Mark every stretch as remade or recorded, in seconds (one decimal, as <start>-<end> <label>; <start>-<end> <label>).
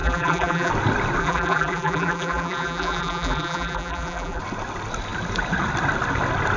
0.0-0.7 remade; 0.7-1.2 recorded; 1.2-4.4 remade; 4.4-6.6 recorded